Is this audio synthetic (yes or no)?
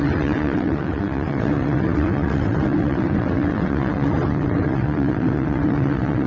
yes